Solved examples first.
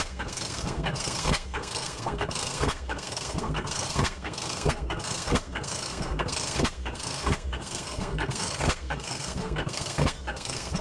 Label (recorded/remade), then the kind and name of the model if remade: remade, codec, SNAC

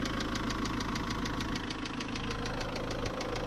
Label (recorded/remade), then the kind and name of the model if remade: recorded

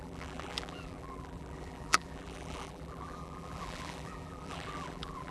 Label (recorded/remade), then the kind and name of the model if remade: remade, vocoder, BigVGAN v2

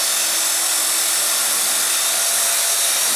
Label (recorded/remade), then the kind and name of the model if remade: recorded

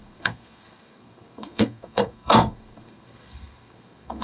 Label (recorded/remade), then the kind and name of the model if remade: remade, codec, SNAC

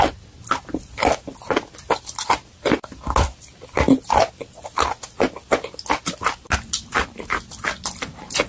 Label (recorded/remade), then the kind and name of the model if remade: recorded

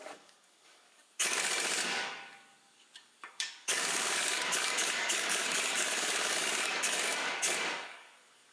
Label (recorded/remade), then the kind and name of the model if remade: remade, codec, DAC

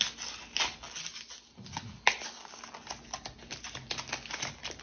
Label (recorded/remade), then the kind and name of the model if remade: recorded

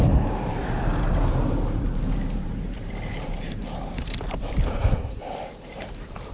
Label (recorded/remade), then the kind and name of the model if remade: remade, vocoder, BigVGAN v2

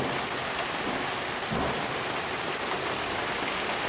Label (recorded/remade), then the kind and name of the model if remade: recorded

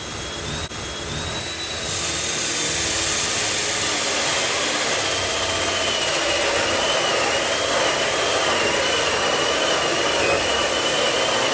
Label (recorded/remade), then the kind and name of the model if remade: recorded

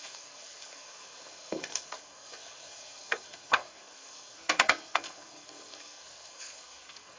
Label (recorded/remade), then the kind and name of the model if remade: remade, codec, SNAC